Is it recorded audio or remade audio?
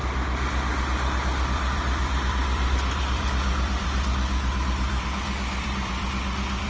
remade